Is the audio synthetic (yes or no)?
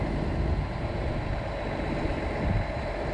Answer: yes